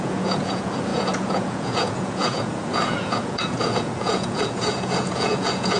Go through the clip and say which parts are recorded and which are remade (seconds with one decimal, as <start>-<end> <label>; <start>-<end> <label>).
0.0-5.8 remade